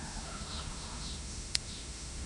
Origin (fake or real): fake